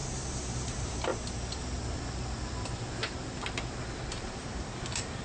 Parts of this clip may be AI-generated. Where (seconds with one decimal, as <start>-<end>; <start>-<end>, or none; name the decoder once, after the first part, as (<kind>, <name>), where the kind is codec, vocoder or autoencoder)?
0.7-1.1 (vocoder, BigVGAN v2); 4.2-5.2